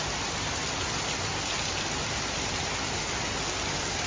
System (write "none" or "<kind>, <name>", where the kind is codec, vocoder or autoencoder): none